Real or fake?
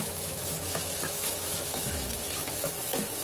fake